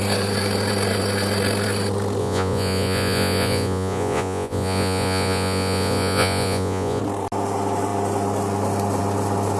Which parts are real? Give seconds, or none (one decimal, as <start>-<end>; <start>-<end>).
0.0-2.2; 7.0-9.6